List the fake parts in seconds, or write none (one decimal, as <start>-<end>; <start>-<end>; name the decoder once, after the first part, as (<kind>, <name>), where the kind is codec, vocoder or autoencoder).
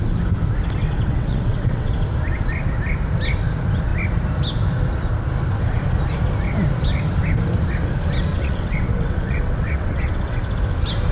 0.8-1.9 (vocoder, WaveNeXt); 8.3-10.4